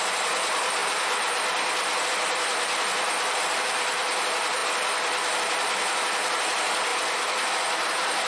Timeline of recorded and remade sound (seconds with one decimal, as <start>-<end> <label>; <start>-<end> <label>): 0.0-8.3 recorded